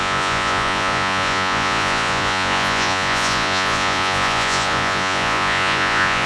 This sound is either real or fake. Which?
fake